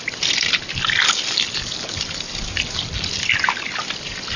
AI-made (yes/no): no